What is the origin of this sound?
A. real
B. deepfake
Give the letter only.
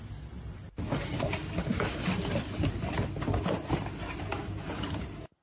A